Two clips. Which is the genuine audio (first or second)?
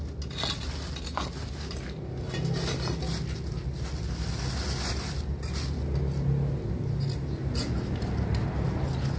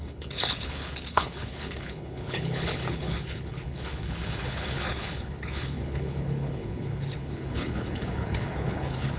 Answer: first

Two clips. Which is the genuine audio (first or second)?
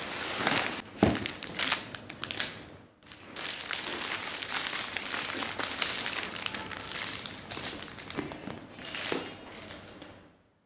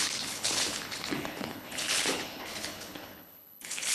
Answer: first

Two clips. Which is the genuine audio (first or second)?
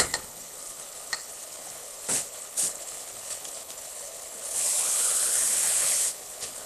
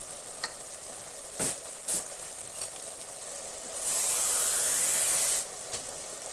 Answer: second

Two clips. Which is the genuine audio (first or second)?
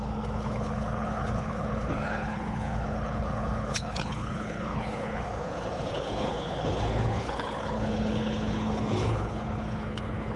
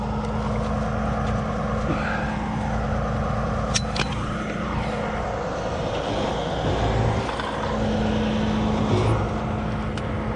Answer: second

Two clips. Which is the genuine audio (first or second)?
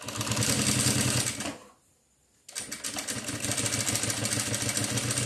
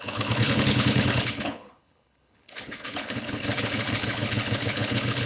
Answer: first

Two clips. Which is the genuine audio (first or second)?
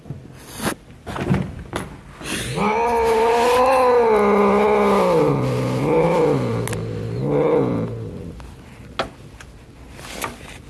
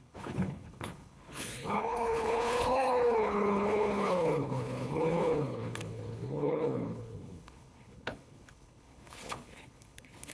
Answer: first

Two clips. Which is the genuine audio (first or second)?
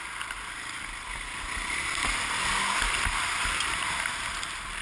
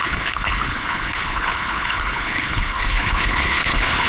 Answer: first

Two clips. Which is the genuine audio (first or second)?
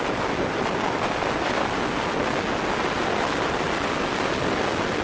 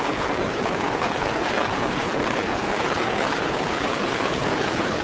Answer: first